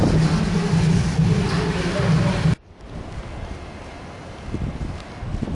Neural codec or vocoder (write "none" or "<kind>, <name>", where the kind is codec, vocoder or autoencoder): none